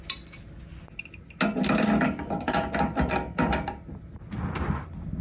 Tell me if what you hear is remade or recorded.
recorded